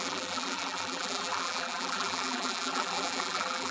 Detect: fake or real fake